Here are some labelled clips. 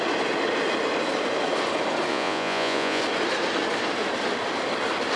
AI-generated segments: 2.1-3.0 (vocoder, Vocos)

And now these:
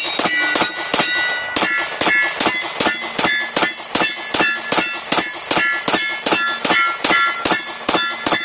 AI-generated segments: none

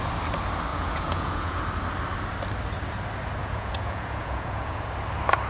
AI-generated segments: 0.7-1.6 (vocoder, Vocos); 3.4-4.9

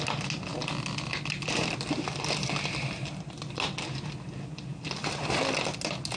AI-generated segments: none